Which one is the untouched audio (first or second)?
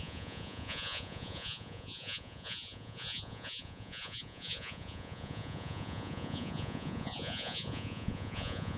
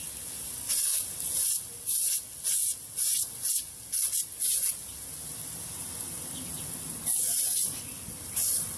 second